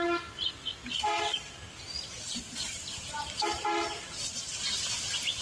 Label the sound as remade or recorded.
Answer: recorded